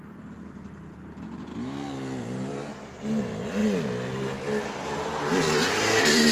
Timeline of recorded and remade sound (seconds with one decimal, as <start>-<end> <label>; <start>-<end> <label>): 0.0-2.5 recorded; 2.5-3.2 remade; 3.2-6.3 recorded